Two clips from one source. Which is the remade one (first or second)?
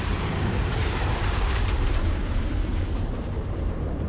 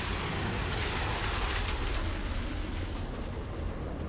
first